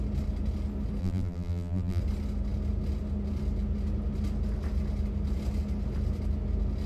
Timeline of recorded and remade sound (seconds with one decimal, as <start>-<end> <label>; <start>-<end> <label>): 0.0-1.0 recorded; 1.0-2.0 remade; 2.0-6.9 recorded